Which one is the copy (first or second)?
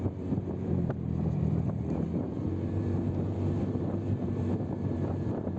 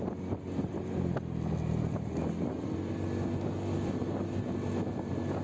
first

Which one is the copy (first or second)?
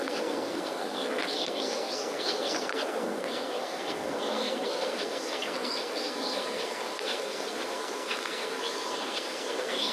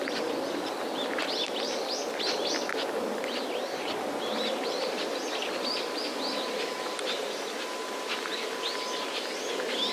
first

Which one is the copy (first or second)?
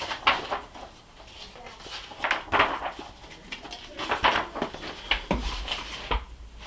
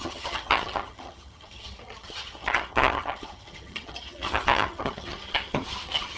second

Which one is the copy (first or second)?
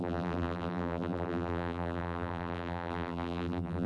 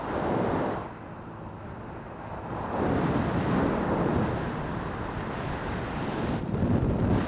first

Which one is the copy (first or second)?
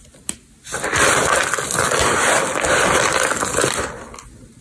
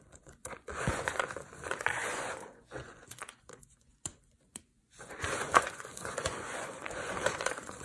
second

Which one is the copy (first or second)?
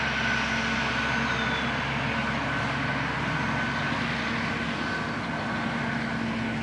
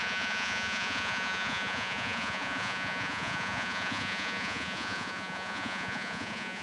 second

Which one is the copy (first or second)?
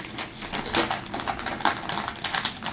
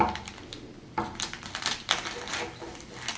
second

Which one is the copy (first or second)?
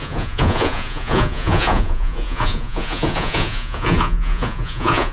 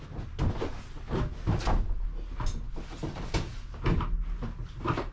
first